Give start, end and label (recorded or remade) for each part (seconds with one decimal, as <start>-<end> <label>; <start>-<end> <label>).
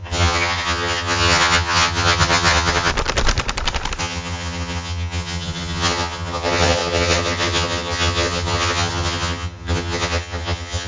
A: 0.0-2.9 remade; 2.9-4.0 recorded; 4.0-10.9 remade